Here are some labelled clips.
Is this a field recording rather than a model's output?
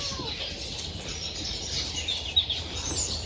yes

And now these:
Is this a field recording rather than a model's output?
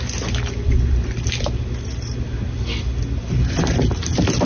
yes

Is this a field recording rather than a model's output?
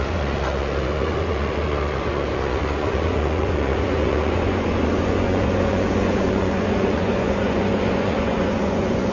no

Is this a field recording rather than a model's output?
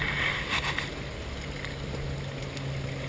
yes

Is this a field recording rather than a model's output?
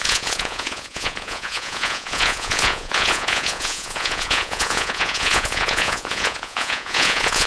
no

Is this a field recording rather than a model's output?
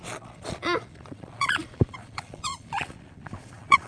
no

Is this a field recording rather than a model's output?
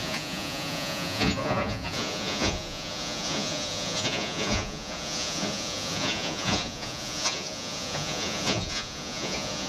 no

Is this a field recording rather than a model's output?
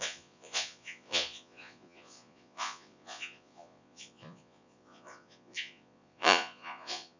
no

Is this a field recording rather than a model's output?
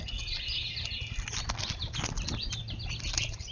yes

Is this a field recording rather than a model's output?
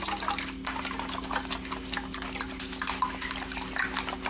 yes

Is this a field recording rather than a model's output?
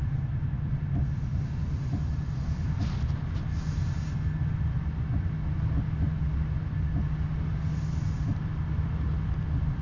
yes